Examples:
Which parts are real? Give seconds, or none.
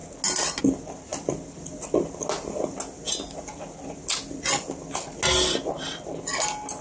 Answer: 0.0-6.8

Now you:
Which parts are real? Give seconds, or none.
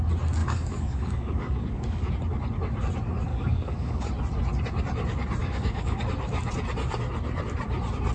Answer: 0.0-0.4; 2.1-3.3; 4.1-5.4; 6.0-8.1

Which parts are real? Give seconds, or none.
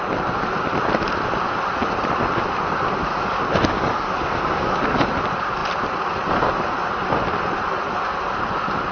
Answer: 0.0-3.1; 5.0-8.9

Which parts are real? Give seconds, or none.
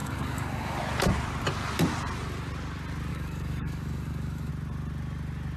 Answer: 0.8-3.1; 4.5-5.6